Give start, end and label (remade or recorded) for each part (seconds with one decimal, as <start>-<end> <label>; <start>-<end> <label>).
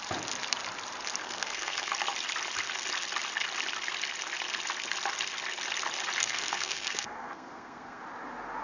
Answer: 0.0-1.2 recorded; 1.2-1.9 remade; 1.9-6.2 recorded; 6.2-8.0 remade; 8.0-8.6 recorded